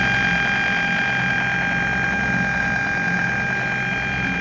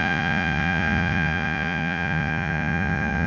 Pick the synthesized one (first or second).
second